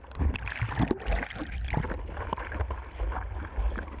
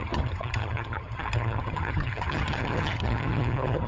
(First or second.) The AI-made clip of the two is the second